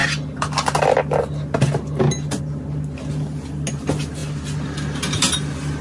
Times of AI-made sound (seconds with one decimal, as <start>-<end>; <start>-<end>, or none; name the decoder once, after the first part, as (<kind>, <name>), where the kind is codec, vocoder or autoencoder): none